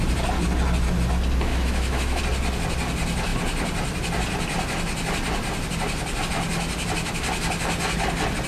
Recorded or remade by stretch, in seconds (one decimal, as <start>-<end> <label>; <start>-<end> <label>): 0.0-1.5 recorded; 1.5-2.2 remade; 2.2-8.5 recorded